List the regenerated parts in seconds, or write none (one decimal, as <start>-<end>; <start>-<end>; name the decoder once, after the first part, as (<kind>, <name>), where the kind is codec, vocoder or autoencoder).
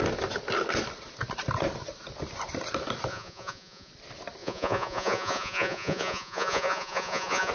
3.1-3.9 (vocoder, Vocos); 4.4-7.5